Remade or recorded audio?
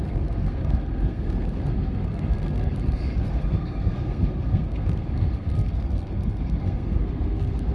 remade